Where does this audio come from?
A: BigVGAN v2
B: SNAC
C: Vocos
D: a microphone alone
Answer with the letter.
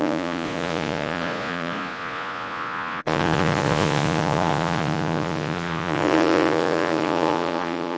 C